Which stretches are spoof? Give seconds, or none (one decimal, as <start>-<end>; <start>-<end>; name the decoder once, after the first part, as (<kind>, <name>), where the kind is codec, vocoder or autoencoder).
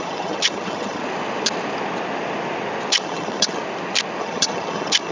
0.0-1.0 (vocoder, HiFi-GAN); 2.9-3.6; 4.2-5.1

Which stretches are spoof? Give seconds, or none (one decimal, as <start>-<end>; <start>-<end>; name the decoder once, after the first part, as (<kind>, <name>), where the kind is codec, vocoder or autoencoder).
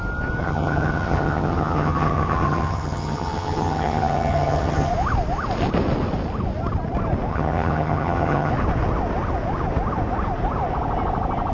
0.4-4.9 (vocoder, HiFi-GAN); 7.3-8.5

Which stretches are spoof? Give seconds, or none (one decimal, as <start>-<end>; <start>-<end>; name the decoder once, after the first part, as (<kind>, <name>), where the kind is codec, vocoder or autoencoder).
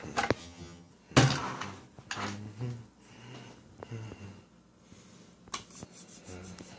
0.4-0.9 (vocoder, HiFi-GAN)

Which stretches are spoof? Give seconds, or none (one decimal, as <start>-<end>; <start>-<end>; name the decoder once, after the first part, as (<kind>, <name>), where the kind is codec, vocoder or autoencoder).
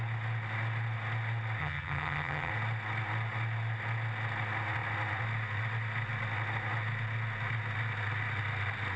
1.6-2.5 (vocoder, HiFi-GAN)